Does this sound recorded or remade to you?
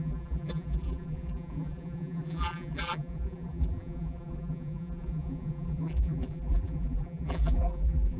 remade